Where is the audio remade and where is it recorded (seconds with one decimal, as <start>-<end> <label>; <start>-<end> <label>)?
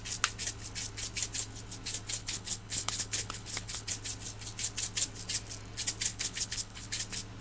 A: 0.0-2.2 recorded; 2.2-3.9 remade; 3.9-6.1 recorded; 6.1-6.9 remade; 6.9-7.4 recorded